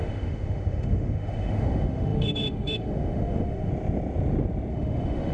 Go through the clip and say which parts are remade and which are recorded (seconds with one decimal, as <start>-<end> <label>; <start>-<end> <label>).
0.0-3.7 remade; 3.7-4.7 recorded; 4.7-5.3 remade